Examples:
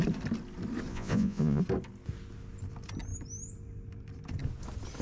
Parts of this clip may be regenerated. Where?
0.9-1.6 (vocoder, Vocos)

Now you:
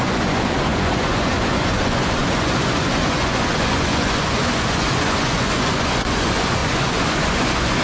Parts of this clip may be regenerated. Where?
0.0-7.8 (vocoder, Vocos)

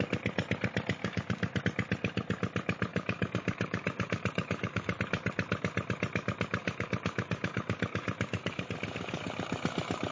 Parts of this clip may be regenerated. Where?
1.0-1.6 (codec, DAC); 2.9-5.0; 6.6-8.6

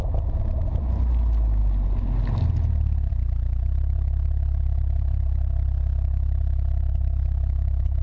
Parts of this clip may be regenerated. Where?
none

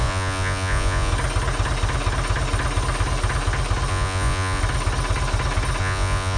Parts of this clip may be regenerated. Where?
0.0-1.1 (vocoder, Vocos); 3.9-4.6; 5.8-6.4

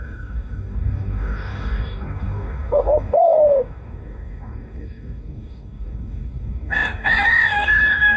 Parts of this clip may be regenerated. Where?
0.0-8.2 (codec, DAC)